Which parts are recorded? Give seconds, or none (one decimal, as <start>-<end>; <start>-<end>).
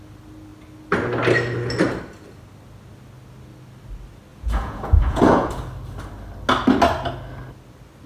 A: 0.0-4.3; 5.5-8.1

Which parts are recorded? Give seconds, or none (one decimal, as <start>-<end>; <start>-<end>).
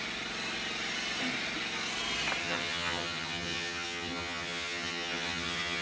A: 0.0-2.4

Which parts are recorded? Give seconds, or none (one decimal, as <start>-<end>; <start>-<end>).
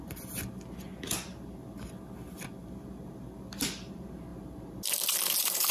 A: 0.0-5.7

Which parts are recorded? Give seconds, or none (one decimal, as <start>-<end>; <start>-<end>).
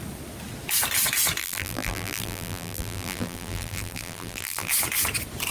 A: 0.0-1.4; 4.7-5.5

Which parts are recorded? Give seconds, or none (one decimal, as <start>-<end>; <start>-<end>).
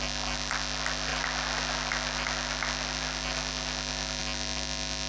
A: 0.0-5.1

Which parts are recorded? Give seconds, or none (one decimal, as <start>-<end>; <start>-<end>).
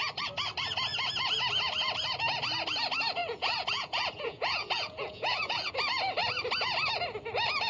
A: 0.0-3.2; 5.7-7.7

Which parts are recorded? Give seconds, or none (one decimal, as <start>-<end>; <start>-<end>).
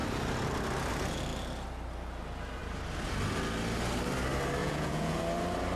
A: 0.0-4.6; 5.2-5.8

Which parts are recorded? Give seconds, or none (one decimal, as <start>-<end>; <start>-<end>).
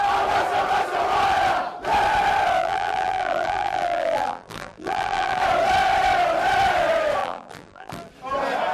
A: 0.0-2.6; 5.4-7.2; 8.1-8.7